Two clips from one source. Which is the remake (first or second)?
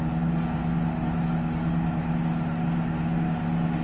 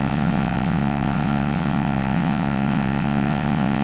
second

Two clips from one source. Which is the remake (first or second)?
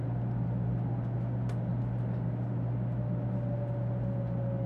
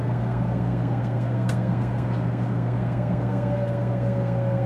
second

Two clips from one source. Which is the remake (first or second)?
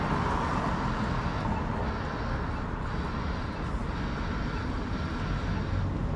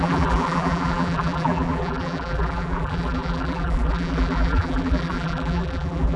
second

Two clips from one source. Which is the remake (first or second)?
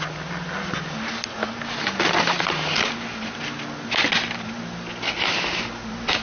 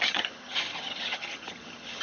second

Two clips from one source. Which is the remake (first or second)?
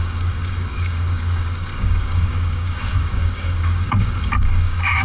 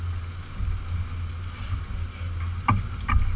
first